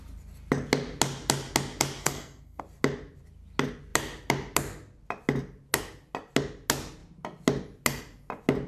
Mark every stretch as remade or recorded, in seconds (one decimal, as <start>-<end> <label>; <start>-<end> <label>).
0.0-2.0 recorded; 2.0-2.6 remade; 2.6-8.7 recorded